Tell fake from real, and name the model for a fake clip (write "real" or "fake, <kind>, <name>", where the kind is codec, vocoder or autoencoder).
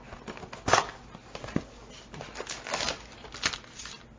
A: real